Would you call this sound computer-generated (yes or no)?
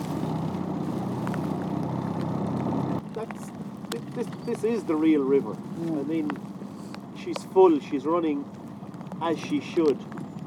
no